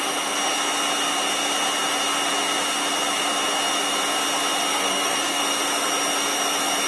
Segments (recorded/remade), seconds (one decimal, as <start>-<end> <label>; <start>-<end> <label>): 0.0-4.7 recorded; 4.7-5.4 remade; 5.4-6.9 recorded